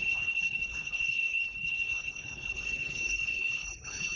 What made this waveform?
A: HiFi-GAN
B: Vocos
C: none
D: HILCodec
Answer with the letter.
D